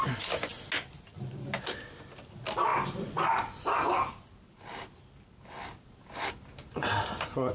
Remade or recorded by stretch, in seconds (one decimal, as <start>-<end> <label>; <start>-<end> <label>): 0.0-7.5 recorded